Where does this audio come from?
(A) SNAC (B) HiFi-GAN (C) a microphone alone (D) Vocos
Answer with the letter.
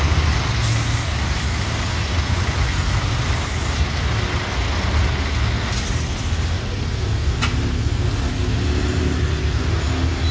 C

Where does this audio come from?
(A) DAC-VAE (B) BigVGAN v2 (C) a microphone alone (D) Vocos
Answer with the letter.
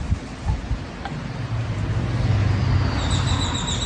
C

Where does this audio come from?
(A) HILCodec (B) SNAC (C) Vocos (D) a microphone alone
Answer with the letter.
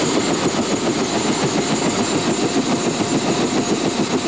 D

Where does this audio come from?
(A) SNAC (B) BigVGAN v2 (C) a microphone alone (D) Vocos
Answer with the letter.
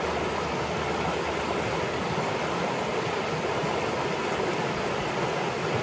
C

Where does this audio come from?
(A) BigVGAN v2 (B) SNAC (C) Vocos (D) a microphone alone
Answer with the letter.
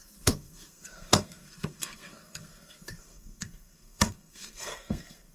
B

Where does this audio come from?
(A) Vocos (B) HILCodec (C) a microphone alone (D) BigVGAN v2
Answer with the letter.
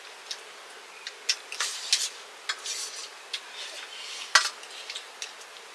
C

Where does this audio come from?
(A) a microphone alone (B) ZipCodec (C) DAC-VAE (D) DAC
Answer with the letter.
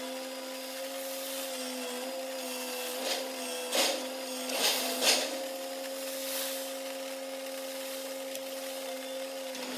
A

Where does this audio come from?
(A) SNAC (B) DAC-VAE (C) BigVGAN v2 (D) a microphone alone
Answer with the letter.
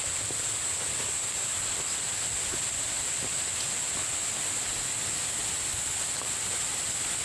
D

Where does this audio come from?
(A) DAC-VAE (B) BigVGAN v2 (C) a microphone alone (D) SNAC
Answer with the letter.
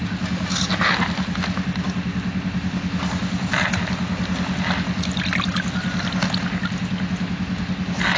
C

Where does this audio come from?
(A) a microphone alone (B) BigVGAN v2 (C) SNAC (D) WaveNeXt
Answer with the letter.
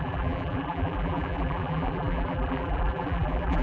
B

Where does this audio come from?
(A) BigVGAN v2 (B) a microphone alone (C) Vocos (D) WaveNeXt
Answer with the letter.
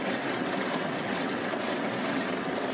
D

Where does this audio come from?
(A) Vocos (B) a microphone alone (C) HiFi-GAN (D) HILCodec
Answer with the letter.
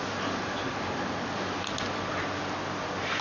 B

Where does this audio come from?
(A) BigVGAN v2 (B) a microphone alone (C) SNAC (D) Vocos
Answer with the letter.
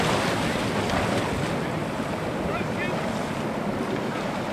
B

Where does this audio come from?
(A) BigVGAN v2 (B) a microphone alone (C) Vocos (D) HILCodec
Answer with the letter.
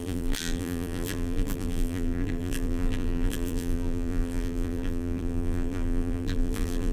A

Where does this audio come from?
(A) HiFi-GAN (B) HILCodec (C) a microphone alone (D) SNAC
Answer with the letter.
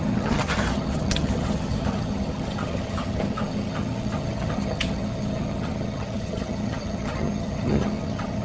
A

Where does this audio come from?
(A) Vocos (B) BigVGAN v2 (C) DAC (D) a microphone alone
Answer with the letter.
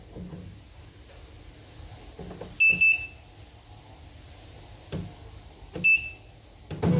D